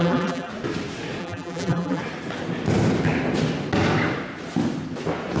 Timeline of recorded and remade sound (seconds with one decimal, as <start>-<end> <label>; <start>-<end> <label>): 0.0-0.5 remade; 0.5-1.2 recorded; 1.2-2.0 remade; 2.0-5.4 recorded